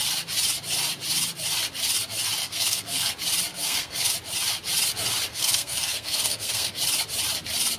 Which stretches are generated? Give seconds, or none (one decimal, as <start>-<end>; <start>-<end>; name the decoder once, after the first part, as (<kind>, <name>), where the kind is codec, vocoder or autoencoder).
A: 2.4-3.1 (codec, SNAC); 3.5-4.1; 5.3-6.8